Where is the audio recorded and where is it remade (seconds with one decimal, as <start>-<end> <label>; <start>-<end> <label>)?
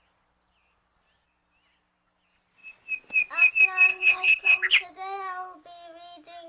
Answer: 0.0-3.9 recorded; 3.9-4.7 remade; 4.7-6.5 recorded